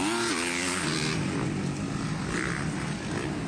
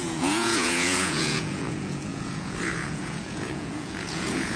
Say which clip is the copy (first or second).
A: second